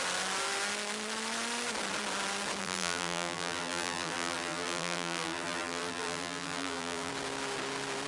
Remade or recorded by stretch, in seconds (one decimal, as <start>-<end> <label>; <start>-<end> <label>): 0.0-2.6 recorded; 2.6-7.1 remade; 7.1-8.1 recorded